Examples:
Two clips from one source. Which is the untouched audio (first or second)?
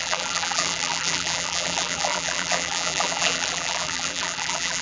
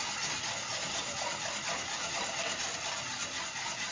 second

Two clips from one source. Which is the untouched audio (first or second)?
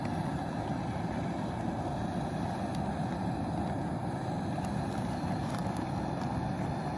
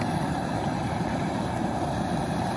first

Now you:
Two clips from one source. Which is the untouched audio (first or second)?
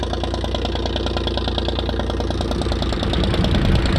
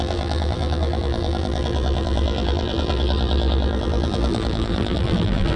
first